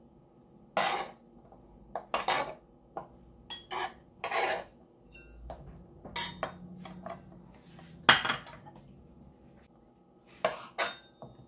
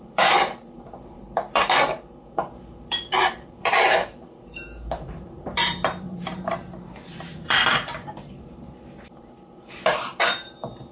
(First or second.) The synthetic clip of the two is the second